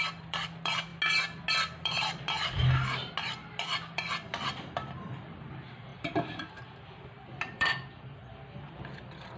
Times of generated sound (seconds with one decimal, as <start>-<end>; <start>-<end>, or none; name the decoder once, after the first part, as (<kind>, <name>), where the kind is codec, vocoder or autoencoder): 0.0-0.9 (vocoder, BigVGAN v2); 1.5-2.6; 3.2-9.4